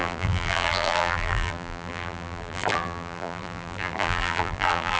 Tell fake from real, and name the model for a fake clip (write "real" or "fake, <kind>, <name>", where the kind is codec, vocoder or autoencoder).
fake, vocoder, BigVGAN v2